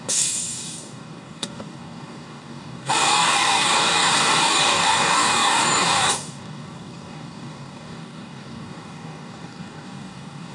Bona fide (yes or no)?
no